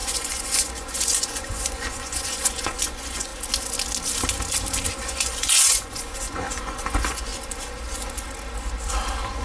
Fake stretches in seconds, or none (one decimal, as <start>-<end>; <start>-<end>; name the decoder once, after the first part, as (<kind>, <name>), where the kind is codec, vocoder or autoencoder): 0.0-3.3 (vocoder, Vocos); 5.0-7.3